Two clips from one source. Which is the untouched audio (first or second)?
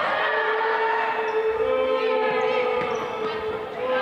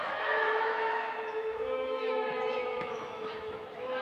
first